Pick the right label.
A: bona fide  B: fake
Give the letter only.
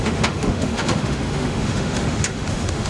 B